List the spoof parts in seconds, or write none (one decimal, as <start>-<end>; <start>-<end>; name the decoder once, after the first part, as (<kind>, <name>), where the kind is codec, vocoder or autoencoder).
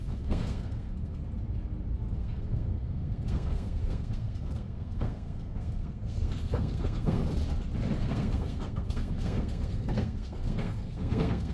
0.0-1.2 (codec, SNAC); 2.1-7.2; 8.0-11.5